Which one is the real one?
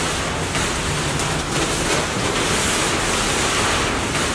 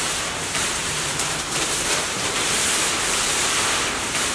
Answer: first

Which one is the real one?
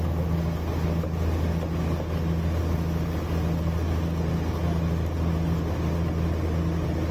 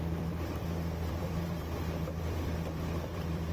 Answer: first